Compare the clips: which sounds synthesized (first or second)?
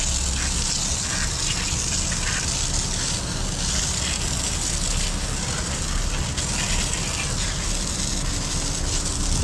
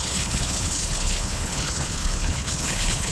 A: second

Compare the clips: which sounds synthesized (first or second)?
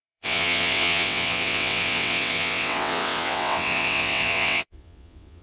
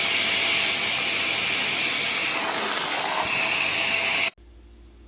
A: first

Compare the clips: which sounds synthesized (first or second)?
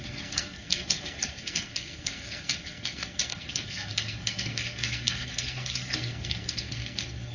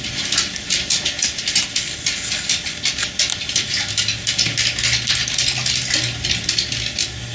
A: first